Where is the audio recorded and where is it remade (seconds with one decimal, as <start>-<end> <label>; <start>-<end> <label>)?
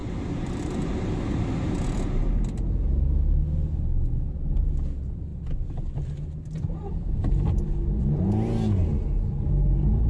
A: 0.0-1.0 remade; 1.0-5.3 recorded; 5.3-8.0 remade; 8.0-10.1 recorded